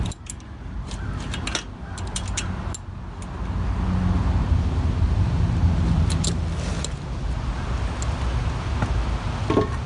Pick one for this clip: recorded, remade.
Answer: recorded